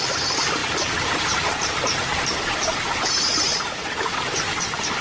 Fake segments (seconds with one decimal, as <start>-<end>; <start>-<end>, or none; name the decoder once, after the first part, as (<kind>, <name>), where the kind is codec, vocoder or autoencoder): 0.0-5.0 (vocoder, BigVGAN v2)